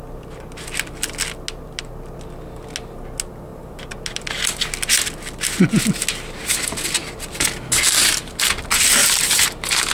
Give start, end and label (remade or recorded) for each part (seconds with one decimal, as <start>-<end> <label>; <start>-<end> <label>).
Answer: 0.0-9.9 recorded